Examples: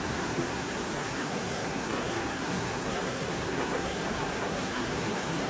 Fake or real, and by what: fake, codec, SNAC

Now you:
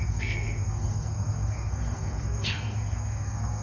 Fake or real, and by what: fake, codec, SNAC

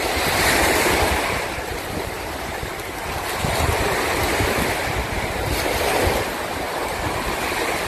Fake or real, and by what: real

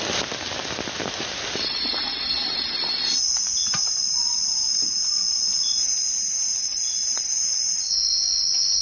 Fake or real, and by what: real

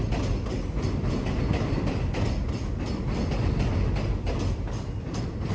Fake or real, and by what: real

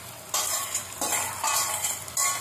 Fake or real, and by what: real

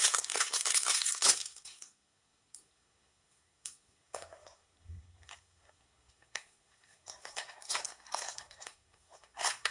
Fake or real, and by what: fake, codec, SNAC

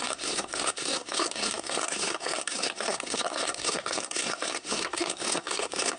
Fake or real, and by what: fake, codec, SNAC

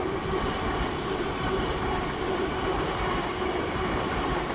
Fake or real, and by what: real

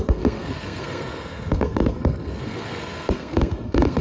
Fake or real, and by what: fake, codec, SNAC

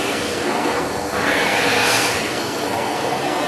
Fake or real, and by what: fake, codec, SNAC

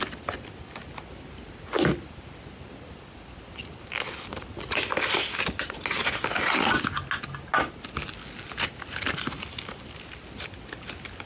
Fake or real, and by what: real